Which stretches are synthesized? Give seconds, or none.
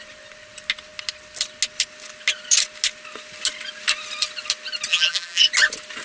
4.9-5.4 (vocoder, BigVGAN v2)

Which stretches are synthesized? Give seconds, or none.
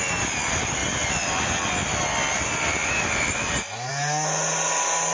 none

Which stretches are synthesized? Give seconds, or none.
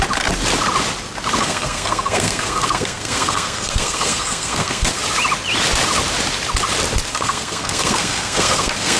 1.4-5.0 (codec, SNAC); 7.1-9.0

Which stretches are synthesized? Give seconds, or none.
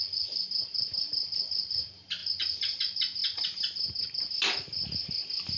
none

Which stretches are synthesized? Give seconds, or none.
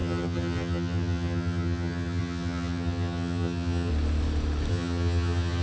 0.0-3.9 (vocoder, HiFi-GAN); 4.7-5.6